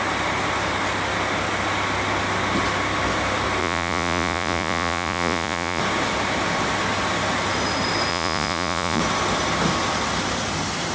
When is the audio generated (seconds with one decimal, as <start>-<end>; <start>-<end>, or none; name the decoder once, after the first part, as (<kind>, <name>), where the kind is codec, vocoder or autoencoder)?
3.6-5.8 (vocoder, Vocos); 8.1-9.0